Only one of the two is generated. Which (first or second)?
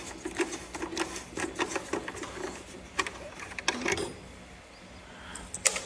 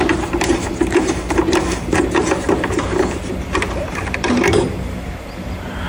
second